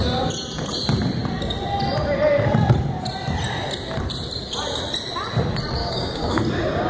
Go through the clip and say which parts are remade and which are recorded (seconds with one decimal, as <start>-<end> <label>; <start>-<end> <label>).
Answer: 0.0-5.8 recorded; 5.8-6.4 remade; 6.4-6.9 recorded